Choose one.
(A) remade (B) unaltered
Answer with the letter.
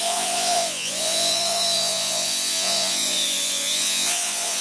A